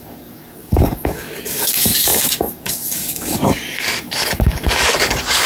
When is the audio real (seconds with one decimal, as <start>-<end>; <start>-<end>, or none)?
none